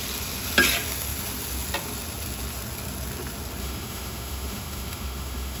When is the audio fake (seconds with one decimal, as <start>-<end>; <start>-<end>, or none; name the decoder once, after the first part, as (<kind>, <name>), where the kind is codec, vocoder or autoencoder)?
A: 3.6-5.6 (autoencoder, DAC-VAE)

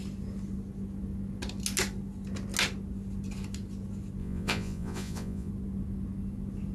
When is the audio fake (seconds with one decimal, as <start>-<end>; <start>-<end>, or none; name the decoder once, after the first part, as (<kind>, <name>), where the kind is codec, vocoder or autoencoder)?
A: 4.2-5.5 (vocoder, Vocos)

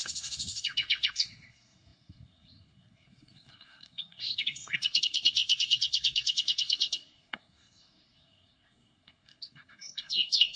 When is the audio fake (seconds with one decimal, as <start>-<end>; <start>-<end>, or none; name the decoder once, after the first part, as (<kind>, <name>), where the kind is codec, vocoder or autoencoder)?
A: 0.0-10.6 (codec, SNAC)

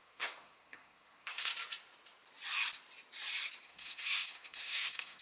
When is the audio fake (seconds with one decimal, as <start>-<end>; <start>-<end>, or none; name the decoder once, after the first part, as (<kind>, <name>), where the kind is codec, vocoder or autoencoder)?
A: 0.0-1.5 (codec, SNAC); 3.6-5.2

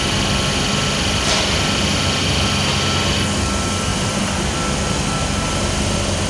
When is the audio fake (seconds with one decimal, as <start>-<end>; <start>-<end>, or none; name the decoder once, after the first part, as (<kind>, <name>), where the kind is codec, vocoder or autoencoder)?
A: 3.9-4.6 (vocoder, BigVGAN v2)

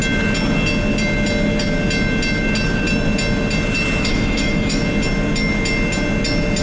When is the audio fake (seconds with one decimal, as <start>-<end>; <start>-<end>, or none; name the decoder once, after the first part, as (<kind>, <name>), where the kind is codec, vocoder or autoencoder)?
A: 4.0-4.8 (autoencoder, DAC-VAE)

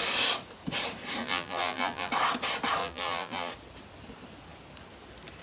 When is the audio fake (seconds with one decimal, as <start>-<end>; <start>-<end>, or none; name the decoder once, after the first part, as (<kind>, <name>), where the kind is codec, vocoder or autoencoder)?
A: 1.2-2.1 (vocoder, BigVGAN v2); 2.8-3.5

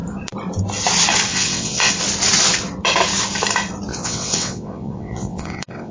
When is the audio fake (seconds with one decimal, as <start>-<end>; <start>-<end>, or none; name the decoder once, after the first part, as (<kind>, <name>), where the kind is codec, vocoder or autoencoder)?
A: 1.3-1.9 (vocoder, WaveNeXt); 3.9-5.9